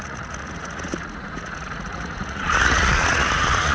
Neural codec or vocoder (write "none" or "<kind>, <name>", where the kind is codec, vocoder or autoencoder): vocoder, Vocos